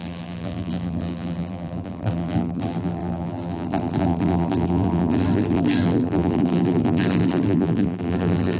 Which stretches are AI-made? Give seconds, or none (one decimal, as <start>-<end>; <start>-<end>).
0.0-8.6